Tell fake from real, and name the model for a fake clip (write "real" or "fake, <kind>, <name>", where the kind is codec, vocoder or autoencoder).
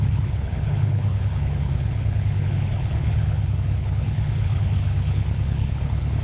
fake, codec, HILCodec